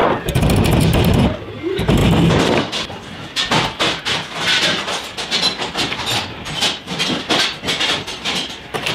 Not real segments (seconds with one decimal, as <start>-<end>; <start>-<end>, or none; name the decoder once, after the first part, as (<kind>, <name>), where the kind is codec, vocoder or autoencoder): 0.0-2.0 (vocoder, BigVGAN v2); 6.6-8.9